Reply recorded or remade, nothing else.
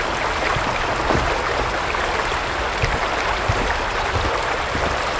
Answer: recorded